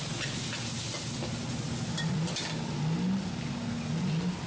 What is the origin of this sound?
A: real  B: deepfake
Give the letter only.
A